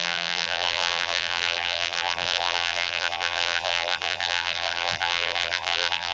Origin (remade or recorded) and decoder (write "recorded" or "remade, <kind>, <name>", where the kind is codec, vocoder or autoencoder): remade, vocoder, BigVGAN v2